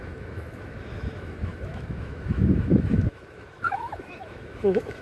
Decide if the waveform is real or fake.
fake